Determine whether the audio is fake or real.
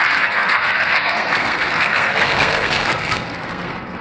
fake